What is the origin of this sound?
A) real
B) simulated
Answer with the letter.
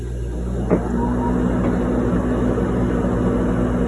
A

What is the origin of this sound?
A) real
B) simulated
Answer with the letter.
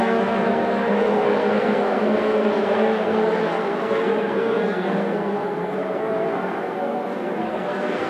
B